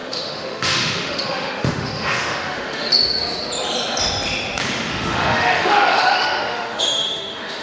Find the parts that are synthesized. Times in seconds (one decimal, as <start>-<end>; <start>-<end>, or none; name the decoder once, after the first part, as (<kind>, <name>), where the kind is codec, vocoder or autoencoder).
0.0-2.9 (autoencoder, DAC-VAE); 4.9-7.6